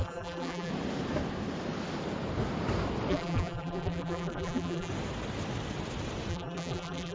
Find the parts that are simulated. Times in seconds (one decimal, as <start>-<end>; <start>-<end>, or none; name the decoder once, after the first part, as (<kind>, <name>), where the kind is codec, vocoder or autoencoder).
0.0-0.7 (vocoder, BigVGAN v2); 3.1-4.9; 6.3-7.1